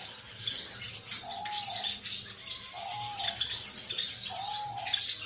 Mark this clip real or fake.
fake